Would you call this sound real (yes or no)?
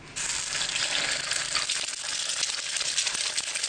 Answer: yes